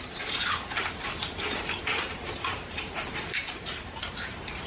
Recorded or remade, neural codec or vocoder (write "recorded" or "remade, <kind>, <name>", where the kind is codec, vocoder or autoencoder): remade, vocoder, BigVGAN v2